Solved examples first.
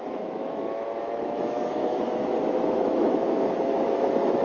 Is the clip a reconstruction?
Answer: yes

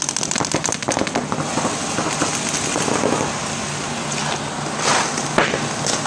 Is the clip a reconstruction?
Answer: no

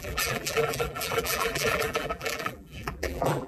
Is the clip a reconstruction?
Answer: yes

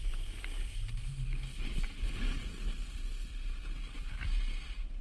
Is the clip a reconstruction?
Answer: no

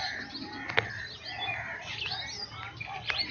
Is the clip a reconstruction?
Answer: no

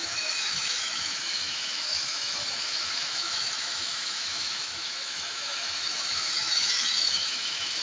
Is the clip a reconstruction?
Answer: yes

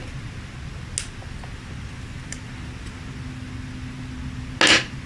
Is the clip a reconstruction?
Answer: no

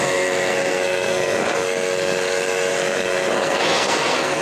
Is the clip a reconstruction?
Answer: yes